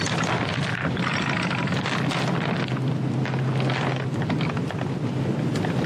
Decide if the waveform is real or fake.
real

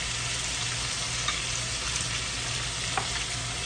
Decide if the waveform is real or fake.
real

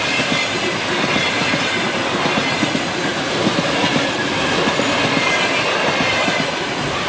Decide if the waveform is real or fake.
real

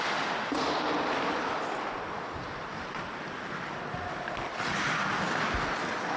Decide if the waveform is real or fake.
real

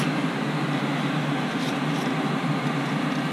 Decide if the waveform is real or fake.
real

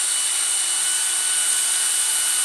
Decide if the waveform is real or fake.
real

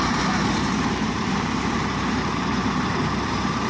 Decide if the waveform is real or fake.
fake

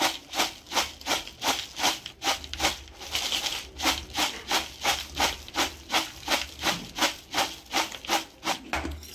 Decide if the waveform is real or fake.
real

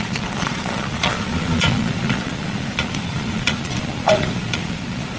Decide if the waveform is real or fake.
fake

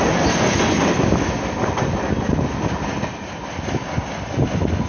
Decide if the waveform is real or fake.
real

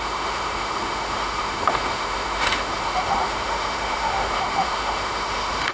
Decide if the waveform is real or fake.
fake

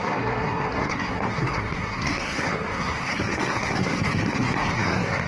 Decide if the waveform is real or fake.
fake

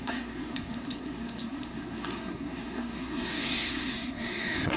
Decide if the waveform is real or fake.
fake